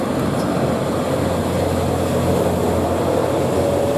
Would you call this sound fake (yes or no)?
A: no